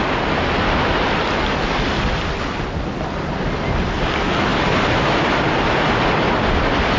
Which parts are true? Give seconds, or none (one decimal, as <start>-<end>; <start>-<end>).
0.0-4.5; 5.4-7.0